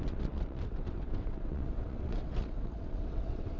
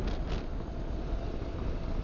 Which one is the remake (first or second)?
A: first